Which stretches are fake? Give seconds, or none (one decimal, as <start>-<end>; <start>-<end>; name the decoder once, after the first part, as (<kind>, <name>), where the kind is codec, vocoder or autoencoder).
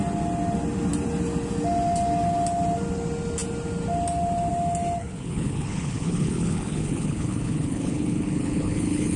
5.0-9.2 (codec, HILCodec)